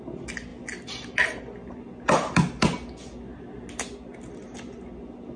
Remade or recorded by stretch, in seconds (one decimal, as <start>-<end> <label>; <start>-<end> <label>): 0.0-5.4 recorded